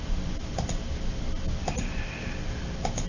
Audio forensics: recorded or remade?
recorded